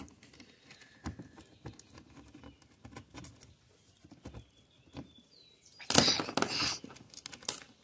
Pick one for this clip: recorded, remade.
recorded